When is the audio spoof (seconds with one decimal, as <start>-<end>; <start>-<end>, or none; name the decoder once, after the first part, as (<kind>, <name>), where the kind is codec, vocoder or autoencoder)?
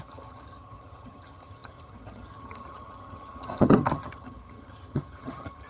0.0-5.7 (vocoder, HiFi-GAN)